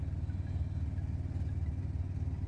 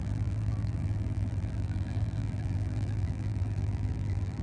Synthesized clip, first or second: second